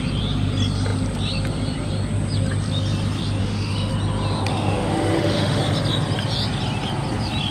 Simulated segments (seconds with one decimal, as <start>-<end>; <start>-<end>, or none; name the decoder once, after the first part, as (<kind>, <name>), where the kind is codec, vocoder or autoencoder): 3.4-3.9 (autoencoder, DAC-VAE); 4.5-5.6

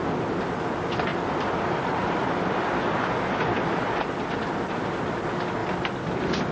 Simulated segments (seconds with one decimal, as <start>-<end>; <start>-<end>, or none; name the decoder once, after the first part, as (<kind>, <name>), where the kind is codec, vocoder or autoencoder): 0.0-6.5 (vocoder, BigVGAN v2)